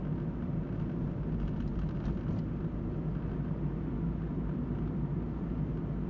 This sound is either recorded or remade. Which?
recorded